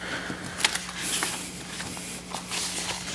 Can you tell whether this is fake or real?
real